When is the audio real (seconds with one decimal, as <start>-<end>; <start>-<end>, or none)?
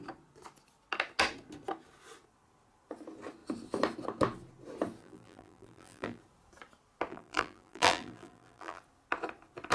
0.0-5.0; 6.2-7.1; 8.8-9.7